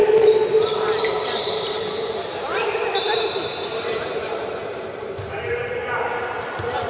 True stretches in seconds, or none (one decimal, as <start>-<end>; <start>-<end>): 5.8-6.4